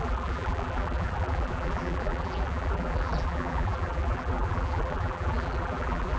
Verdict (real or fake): fake